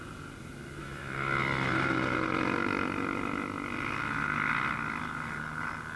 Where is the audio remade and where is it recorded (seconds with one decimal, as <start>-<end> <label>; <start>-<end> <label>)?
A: 0.0-0.8 recorded; 0.8-1.4 remade; 1.4-6.0 recorded

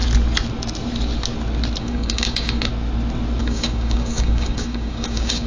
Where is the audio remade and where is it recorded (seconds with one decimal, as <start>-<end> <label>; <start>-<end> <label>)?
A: 0.0-1.8 recorded; 1.8-2.7 remade; 2.7-3.4 recorded; 3.4-5.5 remade

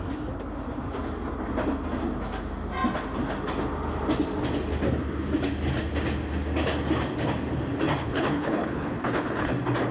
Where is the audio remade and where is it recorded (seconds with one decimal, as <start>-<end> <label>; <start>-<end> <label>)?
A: 0.0-8.0 recorded; 8.0-9.5 remade; 9.5-9.9 recorded